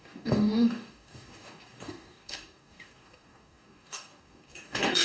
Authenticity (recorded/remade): remade